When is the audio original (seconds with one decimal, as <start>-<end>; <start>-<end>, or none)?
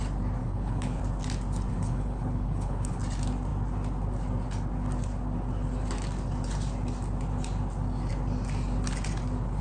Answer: 0.0-0.4; 1.0-1.7; 3.0-9.6